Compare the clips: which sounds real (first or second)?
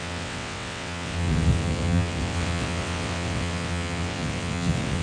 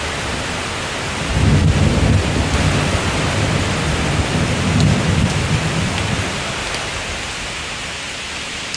second